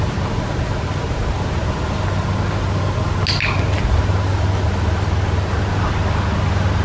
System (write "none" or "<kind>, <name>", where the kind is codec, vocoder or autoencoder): none